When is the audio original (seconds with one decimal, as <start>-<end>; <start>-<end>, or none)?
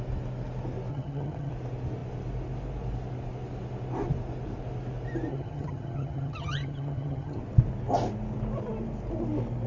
0.0-0.9; 1.5-5.3; 7.4-9.7